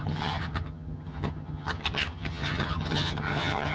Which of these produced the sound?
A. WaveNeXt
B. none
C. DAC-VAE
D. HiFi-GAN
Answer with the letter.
D